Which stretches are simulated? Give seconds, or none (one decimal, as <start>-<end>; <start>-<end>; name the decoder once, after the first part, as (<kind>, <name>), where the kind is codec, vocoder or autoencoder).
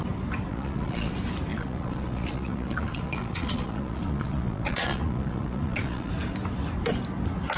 0.5-1.1 (vocoder, Vocos); 1.5-6.1